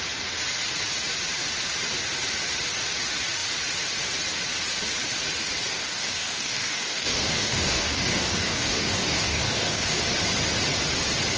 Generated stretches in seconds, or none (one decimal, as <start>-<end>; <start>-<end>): 5.7-10.0